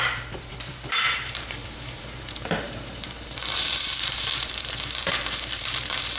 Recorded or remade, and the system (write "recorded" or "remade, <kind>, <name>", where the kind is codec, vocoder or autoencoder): remade, vocoder, BigVGAN v2